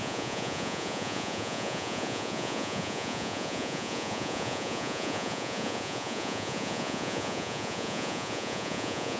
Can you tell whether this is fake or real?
fake